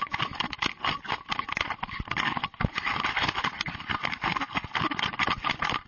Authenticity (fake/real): real